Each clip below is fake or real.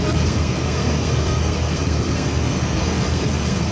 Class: fake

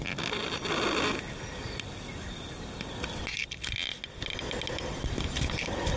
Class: real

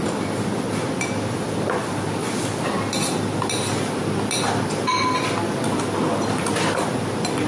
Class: real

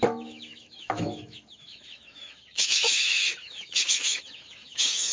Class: fake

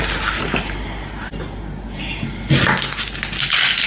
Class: real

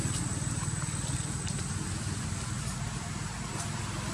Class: real